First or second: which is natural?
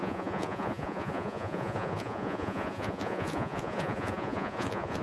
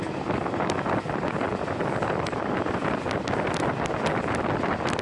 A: second